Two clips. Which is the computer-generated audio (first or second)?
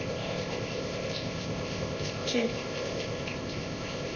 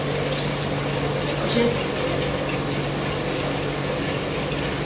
first